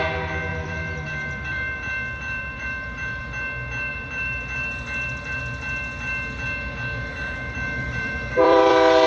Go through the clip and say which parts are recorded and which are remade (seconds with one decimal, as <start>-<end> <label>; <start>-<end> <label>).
0.0-0.5 recorded; 0.5-3.2 remade; 3.2-3.9 recorded; 3.9-5.4 remade; 5.4-7.1 recorded; 7.1-9.1 remade

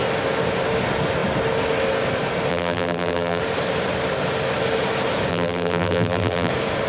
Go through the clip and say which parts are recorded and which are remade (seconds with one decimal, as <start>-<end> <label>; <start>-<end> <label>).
0.0-2.5 recorded; 2.5-3.4 remade; 3.4-5.3 recorded; 5.3-6.5 remade; 6.5-6.9 recorded

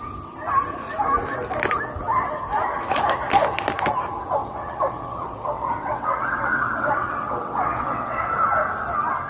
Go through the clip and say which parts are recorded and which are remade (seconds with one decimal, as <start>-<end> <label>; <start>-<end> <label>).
0.0-4.4 recorded; 4.4-8.3 remade; 8.3-9.3 recorded

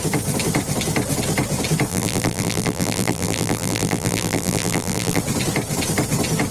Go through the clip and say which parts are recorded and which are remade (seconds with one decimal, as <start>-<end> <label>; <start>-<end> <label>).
0.0-1.9 recorded; 1.9-5.2 remade; 5.2-6.5 recorded

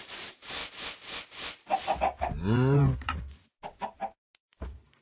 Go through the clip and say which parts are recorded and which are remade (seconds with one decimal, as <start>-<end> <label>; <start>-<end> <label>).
0.0-0.6 remade; 0.6-2.0 recorded; 2.0-4.0 remade; 4.0-4.5 recorded; 4.5-5.0 remade

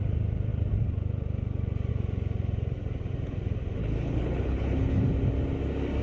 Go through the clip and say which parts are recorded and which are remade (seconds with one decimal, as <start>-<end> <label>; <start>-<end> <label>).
0.0-3.8 recorded; 3.8-5.0 remade; 5.0-6.0 recorded

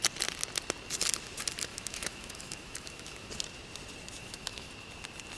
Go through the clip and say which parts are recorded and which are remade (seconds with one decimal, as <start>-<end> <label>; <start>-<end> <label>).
0.0-1.7 recorded; 1.7-3.3 remade; 3.3-4.2 recorded; 4.2-4.7 remade; 4.7-5.4 recorded

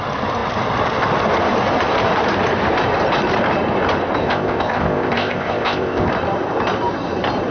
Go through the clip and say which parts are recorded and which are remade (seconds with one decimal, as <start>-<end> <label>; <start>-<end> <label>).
0.0-4.2 recorded; 4.2-6.1 remade; 6.1-7.5 recorded